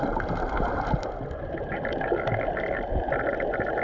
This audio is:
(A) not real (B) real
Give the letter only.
B